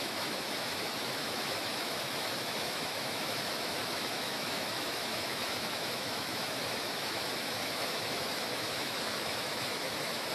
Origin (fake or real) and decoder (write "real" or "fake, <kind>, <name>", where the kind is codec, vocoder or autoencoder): fake, autoencoder, DAC-VAE